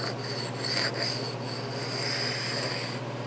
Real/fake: real